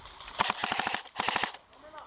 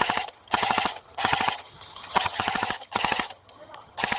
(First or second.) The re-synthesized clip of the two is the second